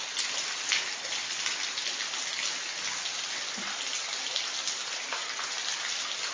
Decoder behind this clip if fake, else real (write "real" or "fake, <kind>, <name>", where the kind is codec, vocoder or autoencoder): real